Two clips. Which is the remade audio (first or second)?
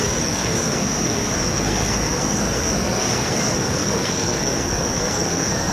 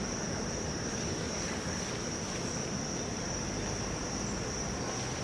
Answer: first